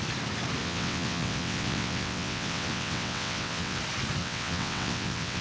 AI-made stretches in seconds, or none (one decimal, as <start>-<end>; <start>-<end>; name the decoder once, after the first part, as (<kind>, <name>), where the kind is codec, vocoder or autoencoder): 0.6-3.8 (vocoder, WaveNeXt); 4.2-5.4

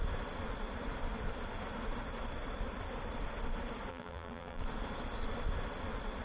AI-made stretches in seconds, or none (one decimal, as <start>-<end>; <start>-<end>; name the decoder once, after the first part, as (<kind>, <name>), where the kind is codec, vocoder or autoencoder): 3.9-4.6 (vocoder, BigVGAN v2)

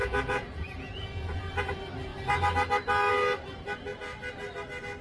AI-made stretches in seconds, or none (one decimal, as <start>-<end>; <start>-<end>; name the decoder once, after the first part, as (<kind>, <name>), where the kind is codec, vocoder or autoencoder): 0.0-1.4 (vocoder, Vocos)

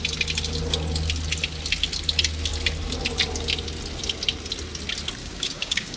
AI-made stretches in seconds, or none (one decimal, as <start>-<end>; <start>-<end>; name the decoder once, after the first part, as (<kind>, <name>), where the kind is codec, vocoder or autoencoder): 5.2-6.0 (codec, DAC)

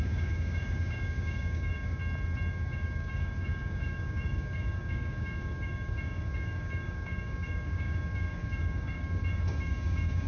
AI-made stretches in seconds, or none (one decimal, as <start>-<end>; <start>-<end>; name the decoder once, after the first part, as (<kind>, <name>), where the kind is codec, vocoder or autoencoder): 0.0-2.0 (codec, DAC); 2.5-10.3

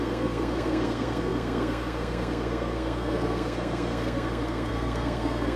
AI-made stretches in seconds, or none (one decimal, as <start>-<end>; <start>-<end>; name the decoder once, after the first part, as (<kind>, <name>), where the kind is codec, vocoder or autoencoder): 0.0-5.6 (codec, SNAC)